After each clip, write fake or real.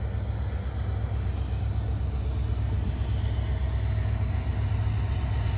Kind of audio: real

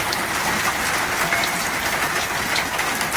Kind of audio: real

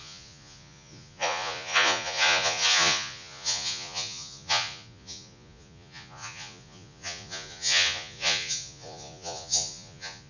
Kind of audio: fake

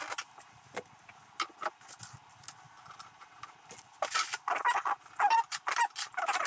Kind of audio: real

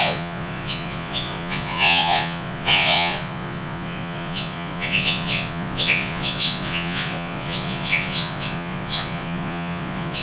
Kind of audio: fake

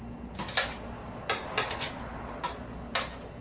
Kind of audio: real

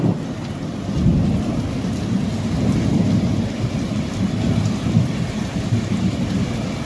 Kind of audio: real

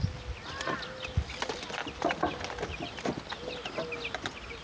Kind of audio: real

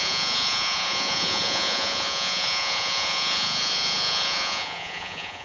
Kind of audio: fake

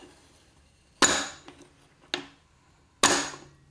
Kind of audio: real